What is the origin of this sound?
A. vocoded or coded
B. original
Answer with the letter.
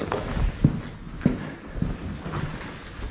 B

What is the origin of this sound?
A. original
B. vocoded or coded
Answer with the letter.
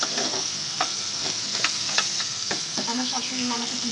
B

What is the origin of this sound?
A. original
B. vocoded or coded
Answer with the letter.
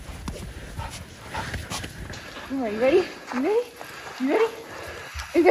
A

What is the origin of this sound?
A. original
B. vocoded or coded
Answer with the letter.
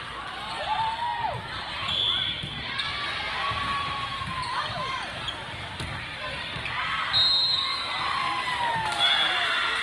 A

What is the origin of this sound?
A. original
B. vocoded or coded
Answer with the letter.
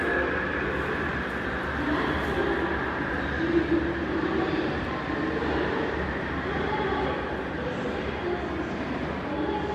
A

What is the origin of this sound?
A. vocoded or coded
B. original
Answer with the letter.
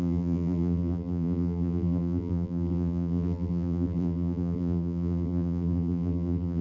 A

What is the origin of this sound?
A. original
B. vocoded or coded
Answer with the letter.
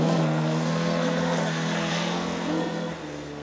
B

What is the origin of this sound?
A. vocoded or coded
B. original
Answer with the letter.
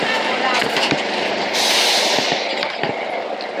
B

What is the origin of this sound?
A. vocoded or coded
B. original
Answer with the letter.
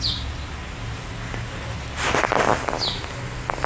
B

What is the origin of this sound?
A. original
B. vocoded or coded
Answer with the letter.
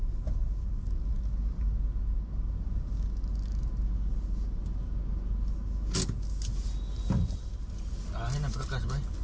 A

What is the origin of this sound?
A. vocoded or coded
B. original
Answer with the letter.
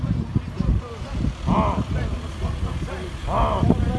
B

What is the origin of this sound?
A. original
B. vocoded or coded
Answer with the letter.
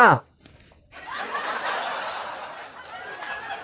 A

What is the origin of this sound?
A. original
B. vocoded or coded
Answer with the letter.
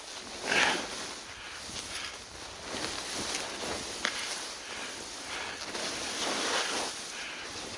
A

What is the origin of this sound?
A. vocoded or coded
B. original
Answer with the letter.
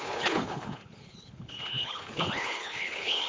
A